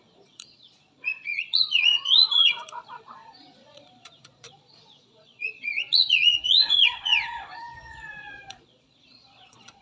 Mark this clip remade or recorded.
remade